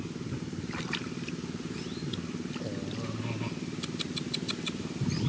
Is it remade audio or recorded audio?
recorded